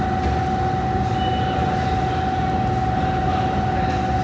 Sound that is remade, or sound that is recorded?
recorded